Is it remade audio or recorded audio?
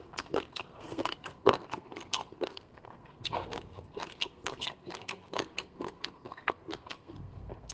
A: remade